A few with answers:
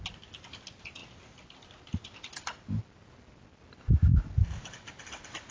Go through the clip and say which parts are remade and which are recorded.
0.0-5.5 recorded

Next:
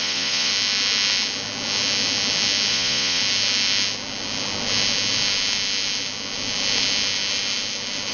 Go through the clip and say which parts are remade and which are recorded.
0.0-0.5 remade; 0.5-2.7 recorded; 2.7-3.2 remade; 3.2-8.1 recorded

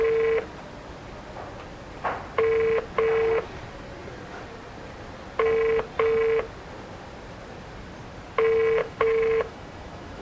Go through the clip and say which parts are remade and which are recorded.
0.0-8.8 recorded; 8.8-10.2 remade

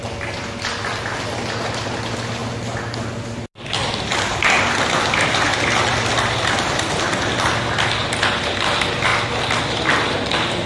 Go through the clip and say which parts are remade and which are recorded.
0.0-10.7 recorded

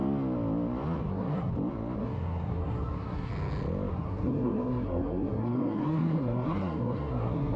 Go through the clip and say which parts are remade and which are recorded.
0.0-1.1 recorded; 1.1-1.5 remade; 1.5-2.0 recorded; 2.0-3.3 remade; 3.3-3.9 recorded; 3.9-7.6 remade